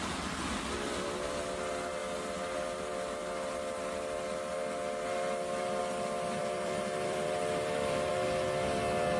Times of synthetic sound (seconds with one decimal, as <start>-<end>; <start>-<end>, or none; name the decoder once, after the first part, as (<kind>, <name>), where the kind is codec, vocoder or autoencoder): 6.4-8.1 (vocoder, BigVGAN v2)